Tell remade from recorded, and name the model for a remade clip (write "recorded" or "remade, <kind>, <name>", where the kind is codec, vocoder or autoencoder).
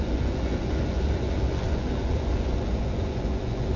remade, vocoder, Vocos